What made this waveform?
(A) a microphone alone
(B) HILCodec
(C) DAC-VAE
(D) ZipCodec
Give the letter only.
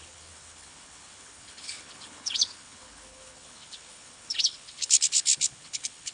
B